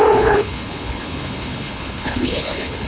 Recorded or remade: remade